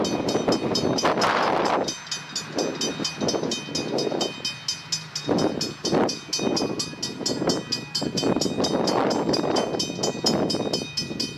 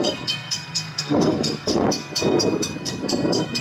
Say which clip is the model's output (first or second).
second